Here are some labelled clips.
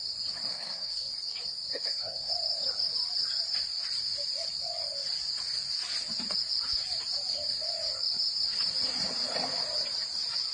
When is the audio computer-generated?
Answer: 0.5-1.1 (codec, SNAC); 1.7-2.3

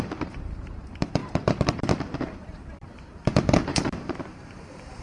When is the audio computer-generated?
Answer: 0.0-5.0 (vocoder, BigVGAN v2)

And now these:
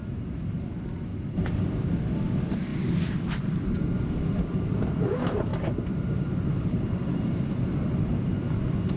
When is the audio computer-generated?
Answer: 1.1-1.9 (vocoder, BigVGAN v2); 2.7-3.8; 5.5-7.9

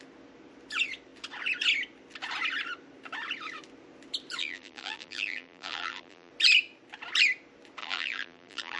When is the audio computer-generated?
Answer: 4.4-6.3 (vocoder, BigVGAN v2); 7.8-8.8

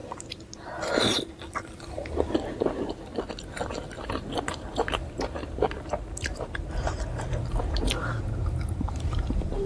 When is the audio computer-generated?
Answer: 3.3-9.7 (vocoder, BigVGAN v2)

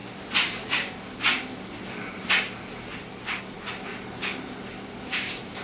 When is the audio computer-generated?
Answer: 0.0-3.9 (vocoder, BigVGAN v2); 4.7-5.6

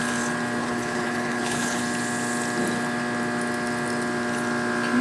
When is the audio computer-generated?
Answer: 0.6-1.8 (codec, HILCodec)

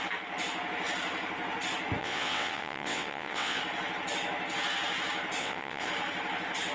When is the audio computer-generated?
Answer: 2.0-3.6 (vocoder, WaveNeXt); 5.4-5.9